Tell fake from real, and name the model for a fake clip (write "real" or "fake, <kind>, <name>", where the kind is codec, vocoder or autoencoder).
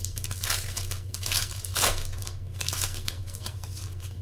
fake, codec, SNAC